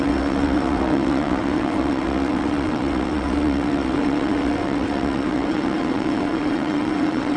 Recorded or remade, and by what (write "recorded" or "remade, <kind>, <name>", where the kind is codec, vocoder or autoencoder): remade, vocoder, WaveNeXt